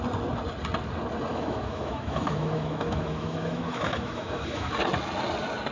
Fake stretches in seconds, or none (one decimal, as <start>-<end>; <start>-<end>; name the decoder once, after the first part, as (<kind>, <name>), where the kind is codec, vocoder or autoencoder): 1.3-4.7 (autoencoder, DAC-VAE)

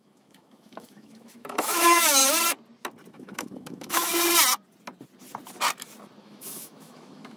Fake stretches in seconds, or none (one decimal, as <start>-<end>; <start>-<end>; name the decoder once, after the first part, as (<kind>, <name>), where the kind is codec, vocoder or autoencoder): 0.0-2.2 (autoencoder, DAC-VAE); 3.1-4.1; 6.2-7.4

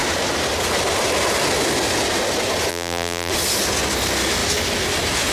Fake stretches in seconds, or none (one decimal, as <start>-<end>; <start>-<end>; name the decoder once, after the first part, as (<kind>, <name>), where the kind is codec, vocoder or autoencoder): 2.7-3.3 (vocoder, BigVGAN v2)

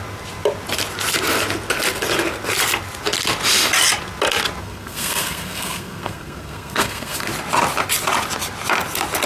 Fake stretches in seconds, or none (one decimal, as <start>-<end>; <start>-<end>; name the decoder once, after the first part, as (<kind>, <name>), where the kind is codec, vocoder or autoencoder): 4.6-7.3 (codec, SNAC)

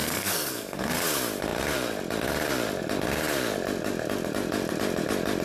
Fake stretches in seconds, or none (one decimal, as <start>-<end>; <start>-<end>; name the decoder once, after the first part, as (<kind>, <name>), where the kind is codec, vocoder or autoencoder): 0.0-0.9 (codec, SNAC)

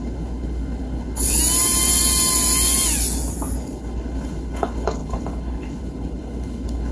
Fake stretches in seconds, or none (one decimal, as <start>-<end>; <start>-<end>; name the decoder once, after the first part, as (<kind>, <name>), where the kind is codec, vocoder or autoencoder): 0.0-1.4 (codec, HILCodec); 3.6-6.9

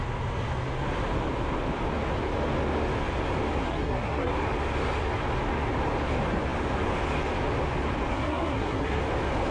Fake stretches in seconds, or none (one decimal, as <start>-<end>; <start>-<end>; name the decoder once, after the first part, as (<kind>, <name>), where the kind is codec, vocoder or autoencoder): 3.6-4.3 (codec, SNAC); 8.1-9.0